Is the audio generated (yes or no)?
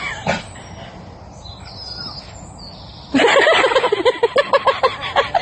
no